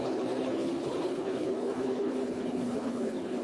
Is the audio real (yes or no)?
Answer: no